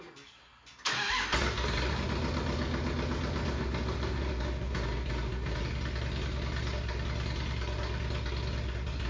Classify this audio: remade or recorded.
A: recorded